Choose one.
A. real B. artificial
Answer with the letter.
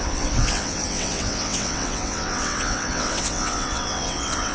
B